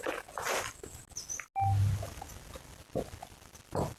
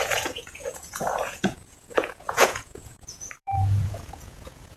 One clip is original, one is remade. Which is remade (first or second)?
second